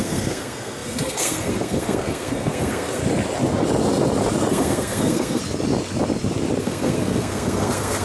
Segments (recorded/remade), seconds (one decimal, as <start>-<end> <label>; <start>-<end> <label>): 0.0-3.0 remade; 3.0-4.5 recorded; 4.5-5.4 remade; 5.4-6.6 recorded; 6.6-8.0 remade